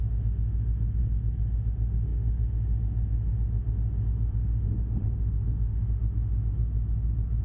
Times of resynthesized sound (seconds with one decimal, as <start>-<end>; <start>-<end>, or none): 0.0-1.0; 1.5-6.6